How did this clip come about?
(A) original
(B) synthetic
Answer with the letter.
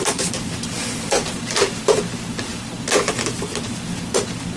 A